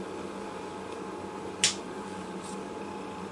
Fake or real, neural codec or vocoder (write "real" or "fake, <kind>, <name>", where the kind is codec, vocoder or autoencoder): real